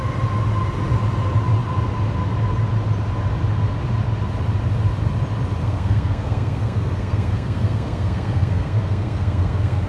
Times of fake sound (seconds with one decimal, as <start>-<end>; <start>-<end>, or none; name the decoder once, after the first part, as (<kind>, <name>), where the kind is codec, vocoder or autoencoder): 5.6-9.9 (codec, SNAC)